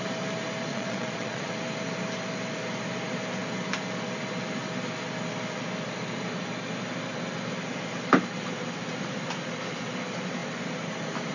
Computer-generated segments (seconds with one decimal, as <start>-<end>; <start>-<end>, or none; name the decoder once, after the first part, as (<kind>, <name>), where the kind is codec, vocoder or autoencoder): 0.7-1.5 (vocoder, Vocos)